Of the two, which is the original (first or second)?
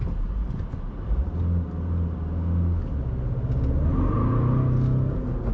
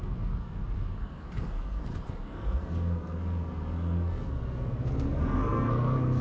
first